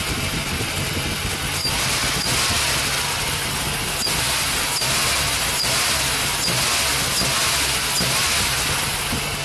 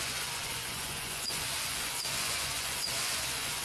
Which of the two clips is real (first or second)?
first